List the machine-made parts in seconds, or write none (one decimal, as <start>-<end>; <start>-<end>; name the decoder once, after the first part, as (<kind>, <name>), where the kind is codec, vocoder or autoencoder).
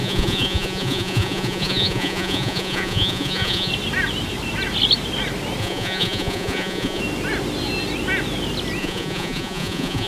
0.0-3.7 (vocoder, Vocos); 5.6-7.0; 8.8-10.1